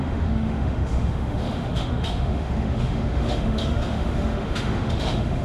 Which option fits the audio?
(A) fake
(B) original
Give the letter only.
A